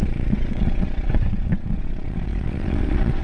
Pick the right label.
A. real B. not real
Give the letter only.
B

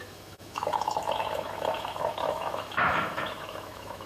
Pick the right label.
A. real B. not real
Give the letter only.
B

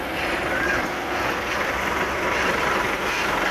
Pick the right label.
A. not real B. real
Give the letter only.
A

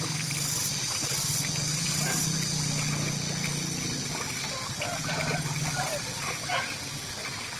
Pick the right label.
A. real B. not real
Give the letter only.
A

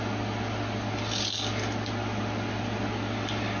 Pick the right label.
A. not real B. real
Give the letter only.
B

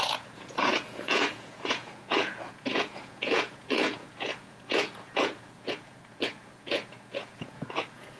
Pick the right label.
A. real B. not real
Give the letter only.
B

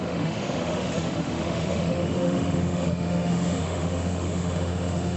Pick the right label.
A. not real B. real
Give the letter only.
A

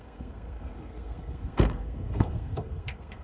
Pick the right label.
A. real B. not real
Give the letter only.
B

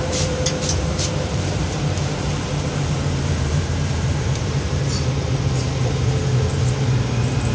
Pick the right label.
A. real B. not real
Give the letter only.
B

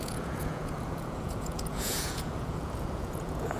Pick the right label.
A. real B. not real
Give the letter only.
B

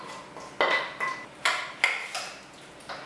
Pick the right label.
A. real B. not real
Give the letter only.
A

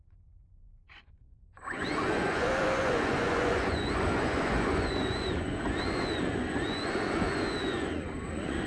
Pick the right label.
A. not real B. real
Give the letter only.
A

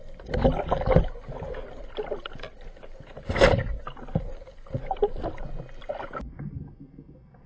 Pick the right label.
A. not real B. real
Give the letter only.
B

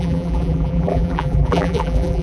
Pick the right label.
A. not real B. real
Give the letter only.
A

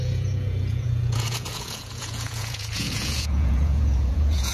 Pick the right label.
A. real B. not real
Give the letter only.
B